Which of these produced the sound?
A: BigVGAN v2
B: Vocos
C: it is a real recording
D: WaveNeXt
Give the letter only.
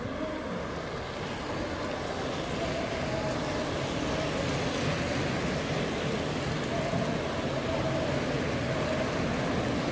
C